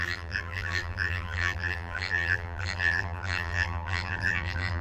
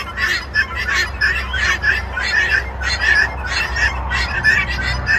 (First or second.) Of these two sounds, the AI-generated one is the first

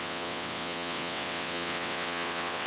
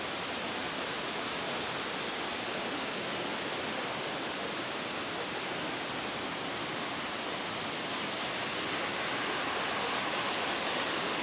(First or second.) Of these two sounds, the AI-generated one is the first